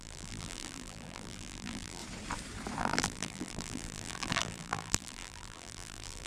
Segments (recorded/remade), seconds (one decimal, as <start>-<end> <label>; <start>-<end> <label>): 0.0-2.0 remade; 2.0-2.8 recorded; 2.8-6.3 remade